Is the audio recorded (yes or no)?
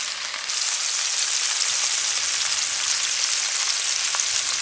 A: yes